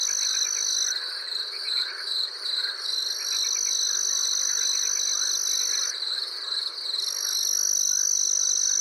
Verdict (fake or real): real